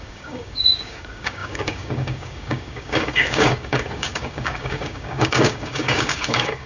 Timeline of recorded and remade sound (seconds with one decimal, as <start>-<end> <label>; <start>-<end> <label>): 0.0-6.7 remade